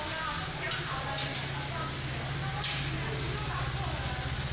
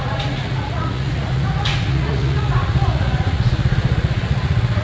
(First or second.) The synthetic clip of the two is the second